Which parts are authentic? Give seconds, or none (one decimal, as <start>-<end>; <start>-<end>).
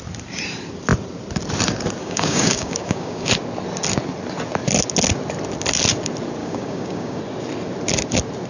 0.0-2.0; 3.3-6.4; 7.2-8.5